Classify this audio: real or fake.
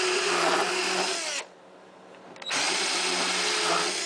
real